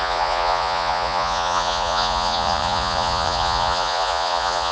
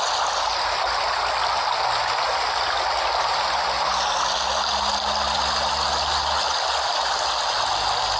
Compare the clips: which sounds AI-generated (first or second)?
first